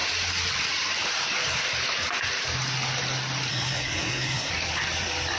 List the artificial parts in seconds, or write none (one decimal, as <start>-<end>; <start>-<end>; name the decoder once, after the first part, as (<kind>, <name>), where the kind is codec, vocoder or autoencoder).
3.5-4.5 (codec, SNAC)